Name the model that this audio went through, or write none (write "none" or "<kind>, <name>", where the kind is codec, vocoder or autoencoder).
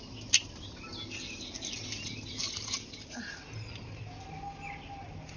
none